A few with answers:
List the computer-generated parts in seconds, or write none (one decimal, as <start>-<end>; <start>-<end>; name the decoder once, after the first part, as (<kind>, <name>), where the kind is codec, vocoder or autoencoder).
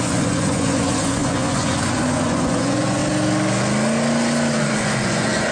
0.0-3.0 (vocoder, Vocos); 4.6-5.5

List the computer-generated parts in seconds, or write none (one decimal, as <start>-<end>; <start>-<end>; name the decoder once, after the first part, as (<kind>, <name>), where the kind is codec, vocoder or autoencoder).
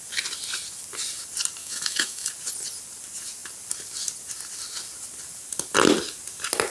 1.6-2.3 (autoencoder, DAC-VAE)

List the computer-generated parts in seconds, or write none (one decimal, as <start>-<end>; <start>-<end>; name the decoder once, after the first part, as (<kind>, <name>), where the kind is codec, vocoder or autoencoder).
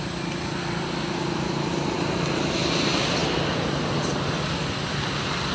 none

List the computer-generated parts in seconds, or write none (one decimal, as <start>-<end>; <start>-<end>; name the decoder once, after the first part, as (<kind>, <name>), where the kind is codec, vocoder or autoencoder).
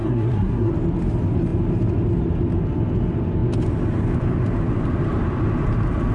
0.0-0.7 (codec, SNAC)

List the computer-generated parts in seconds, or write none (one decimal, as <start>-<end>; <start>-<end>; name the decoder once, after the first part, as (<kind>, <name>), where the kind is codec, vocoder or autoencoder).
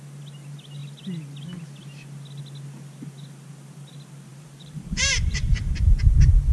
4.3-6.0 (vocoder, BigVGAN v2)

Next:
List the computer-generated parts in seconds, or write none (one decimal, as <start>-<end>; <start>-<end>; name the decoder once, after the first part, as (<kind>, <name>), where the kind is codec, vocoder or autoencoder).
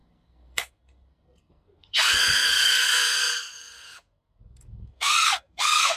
0.0-6.0 (codec, SNAC)